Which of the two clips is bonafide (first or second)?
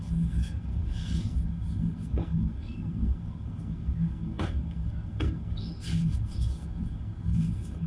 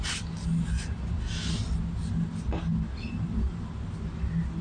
second